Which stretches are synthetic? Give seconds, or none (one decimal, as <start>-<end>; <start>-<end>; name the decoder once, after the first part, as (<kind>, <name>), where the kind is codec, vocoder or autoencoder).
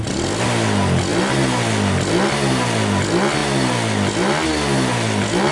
none